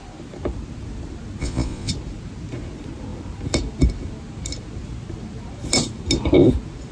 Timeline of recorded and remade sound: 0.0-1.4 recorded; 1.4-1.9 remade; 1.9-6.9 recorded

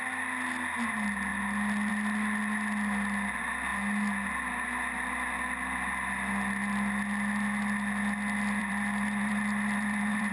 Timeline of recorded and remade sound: 0.0-8.6 recorded; 8.6-10.3 remade

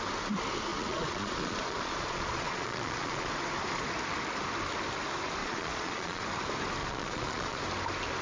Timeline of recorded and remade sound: 0.0-0.7 recorded; 0.7-3.3 remade; 3.3-5.4 recorded; 5.4-6.2 remade; 6.2-6.8 recorded; 6.8-7.6 remade; 7.6-8.2 recorded